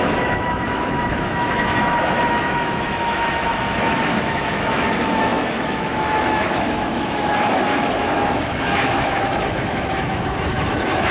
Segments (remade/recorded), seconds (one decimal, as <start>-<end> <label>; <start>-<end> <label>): 0.0-11.1 remade